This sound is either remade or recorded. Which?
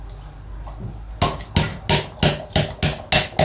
recorded